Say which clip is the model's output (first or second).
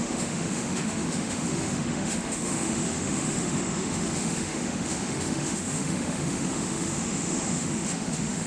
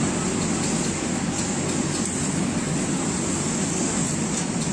first